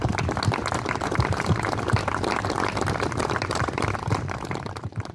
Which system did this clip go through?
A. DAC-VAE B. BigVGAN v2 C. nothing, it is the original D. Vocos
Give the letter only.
B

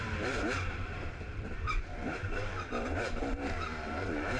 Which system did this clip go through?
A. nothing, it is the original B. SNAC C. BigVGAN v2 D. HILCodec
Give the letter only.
C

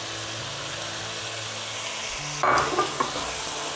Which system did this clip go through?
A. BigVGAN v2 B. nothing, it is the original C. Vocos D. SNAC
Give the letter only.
B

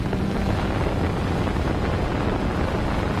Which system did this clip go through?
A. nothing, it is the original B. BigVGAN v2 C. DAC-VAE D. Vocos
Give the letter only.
A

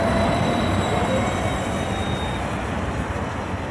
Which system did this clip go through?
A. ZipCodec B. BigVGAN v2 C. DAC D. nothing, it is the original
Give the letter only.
B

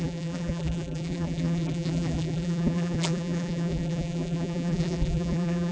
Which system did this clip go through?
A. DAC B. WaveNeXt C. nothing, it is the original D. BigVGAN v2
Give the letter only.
D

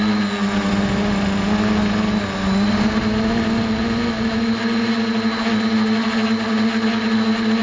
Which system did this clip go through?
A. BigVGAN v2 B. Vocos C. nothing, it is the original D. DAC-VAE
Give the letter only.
C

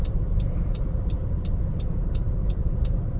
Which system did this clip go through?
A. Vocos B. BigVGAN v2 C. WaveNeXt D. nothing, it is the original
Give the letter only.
B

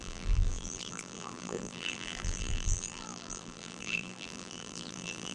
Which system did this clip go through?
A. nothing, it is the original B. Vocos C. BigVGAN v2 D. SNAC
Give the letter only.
C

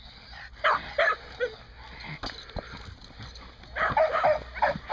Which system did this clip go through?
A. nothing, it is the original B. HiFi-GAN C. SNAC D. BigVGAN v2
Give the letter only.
A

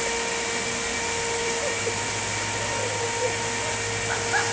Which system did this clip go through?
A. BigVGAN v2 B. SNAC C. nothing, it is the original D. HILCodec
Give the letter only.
C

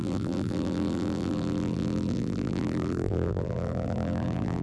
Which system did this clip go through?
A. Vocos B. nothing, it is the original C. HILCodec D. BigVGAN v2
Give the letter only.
D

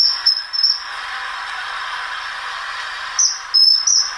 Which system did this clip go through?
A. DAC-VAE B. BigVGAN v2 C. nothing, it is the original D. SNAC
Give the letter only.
B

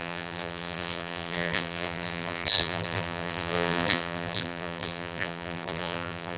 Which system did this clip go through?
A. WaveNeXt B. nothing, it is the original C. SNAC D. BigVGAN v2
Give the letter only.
D